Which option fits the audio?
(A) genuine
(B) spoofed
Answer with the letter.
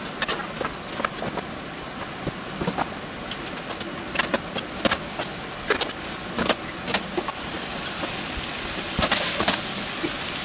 A